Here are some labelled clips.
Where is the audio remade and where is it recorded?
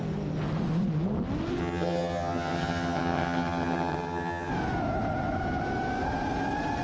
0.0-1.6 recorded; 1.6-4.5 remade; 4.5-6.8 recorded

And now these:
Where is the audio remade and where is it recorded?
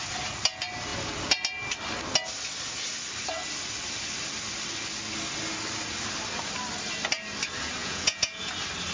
0.0-7.8 recorded; 7.8-8.5 remade; 8.5-8.9 recorded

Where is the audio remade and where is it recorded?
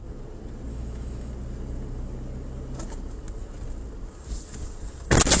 0.0-0.7 recorded; 0.7-1.3 remade; 1.3-5.4 recorded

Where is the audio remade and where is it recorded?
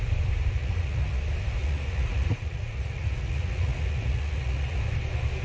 0.0-0.6 recorded; 0.6-1.2 remade; 1.2-1.6 recorded; 1.6-4.8 remade; 4.8-5.4 recorded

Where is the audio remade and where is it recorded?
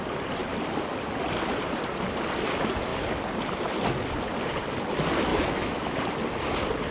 0.0-5.3 recorded; 5.3-6.0 remade; 6.0-6.9 recorded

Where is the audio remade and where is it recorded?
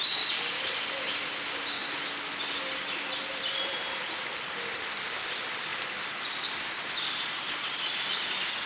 0.0-8.7 recorded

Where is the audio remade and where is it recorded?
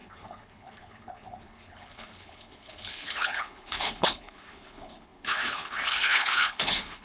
0.0-7.0 remade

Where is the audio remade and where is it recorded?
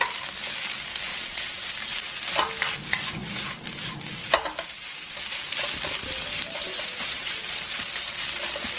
0.0-1.1 recorded; 1.1-1.7 remade; 1.7-6.7 recorded; 6.7-7.4 remade; 7.4-8.8 recorded